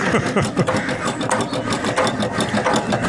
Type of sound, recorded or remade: recorded